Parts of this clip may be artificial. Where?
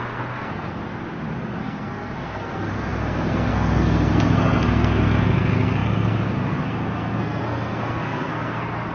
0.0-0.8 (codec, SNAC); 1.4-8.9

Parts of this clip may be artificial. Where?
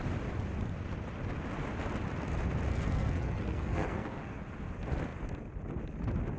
2.7-4.4 (codec, SNAC)